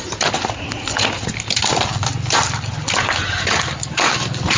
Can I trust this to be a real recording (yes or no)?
yes